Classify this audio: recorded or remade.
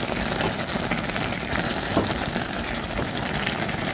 remade